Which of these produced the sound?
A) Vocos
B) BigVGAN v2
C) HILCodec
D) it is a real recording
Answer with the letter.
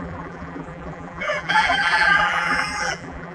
B